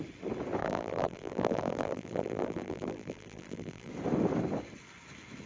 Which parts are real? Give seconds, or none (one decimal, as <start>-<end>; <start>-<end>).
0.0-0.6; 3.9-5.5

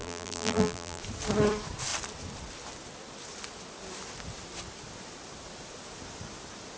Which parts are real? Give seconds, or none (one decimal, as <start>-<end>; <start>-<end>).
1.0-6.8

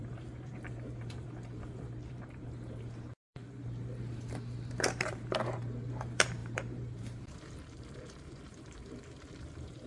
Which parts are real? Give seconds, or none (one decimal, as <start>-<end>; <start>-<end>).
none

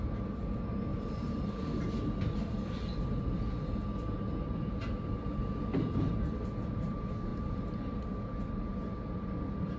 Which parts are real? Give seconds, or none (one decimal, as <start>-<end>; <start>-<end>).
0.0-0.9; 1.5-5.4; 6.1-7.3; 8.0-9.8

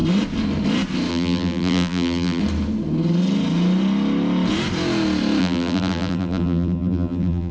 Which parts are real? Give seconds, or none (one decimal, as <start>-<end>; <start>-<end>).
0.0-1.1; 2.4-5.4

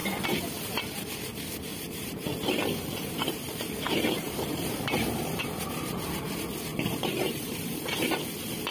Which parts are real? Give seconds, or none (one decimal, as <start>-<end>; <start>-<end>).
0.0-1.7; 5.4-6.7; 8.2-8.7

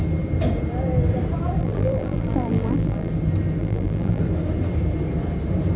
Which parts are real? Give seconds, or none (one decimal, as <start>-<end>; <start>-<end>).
0.0-1.6; 3.1-3.6; 4.2-5.8

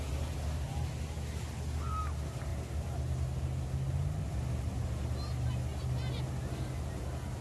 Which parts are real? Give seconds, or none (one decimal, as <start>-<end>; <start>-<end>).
0.0-7.4